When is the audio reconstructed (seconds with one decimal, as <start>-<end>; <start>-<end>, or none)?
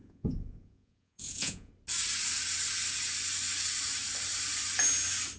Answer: 0.0-1.7